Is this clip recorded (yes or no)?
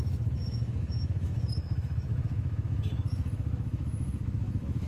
no